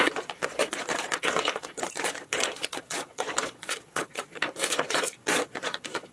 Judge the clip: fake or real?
fake